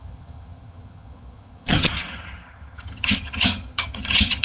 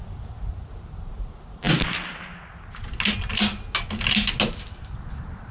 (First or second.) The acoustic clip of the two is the second